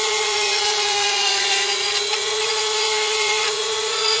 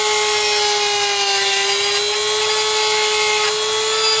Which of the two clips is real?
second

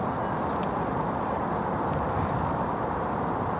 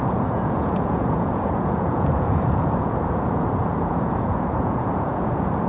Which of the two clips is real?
first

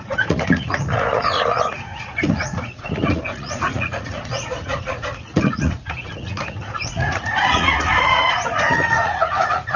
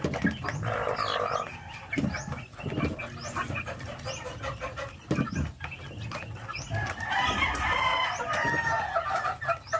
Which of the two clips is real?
second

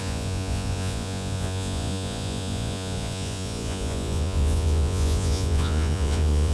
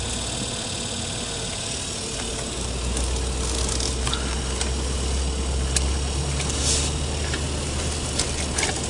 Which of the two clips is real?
second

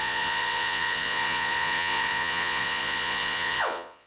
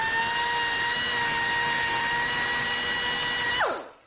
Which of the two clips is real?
second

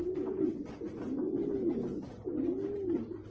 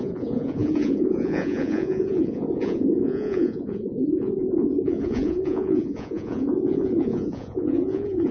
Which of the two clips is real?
first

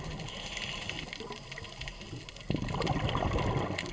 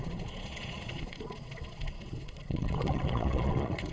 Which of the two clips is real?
first